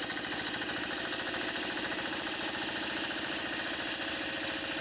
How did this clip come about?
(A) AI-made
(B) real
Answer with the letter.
B